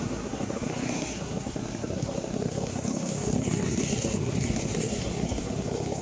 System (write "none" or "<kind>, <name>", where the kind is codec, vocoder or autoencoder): codec, SNAC